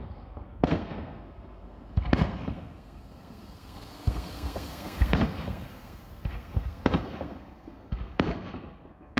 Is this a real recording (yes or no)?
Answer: no